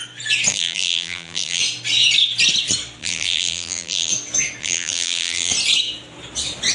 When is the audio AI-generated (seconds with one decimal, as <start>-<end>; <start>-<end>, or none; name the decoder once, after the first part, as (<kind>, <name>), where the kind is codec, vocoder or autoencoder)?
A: 0.5-1.6 (vocoder, BigVGAN v2); 3.0-4.1; 4.6-5.5